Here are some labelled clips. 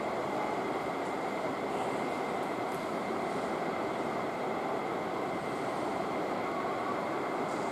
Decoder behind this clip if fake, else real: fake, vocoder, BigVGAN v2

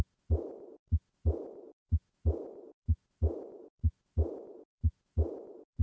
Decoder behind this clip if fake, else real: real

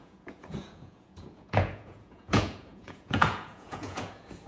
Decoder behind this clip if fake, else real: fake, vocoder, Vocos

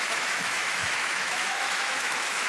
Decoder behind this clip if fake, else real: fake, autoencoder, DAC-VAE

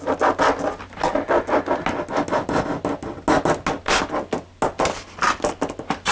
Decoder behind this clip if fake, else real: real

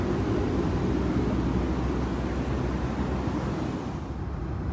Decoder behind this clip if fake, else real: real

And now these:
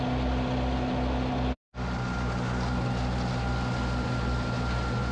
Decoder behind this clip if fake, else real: real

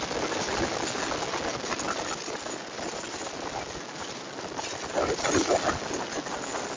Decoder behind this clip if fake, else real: real